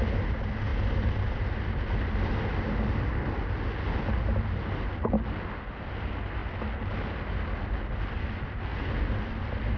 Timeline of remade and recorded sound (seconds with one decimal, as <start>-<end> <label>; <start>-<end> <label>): 0.0-9.8 recorded

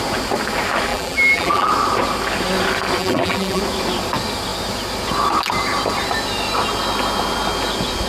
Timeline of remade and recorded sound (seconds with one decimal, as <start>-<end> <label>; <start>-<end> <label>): 0.0-0.9 recorded; 0.9-1.7 remade; 1.7-3.0 recorded; 3.0-3.6 remade; 3.6-8.1 recorded